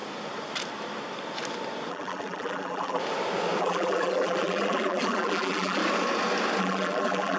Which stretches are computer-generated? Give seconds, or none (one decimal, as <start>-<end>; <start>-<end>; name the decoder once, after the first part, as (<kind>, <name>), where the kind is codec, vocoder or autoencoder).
1.9-3.0 (vocoder, BigVGAN v2); 3.6-5.8; 6.6-7.4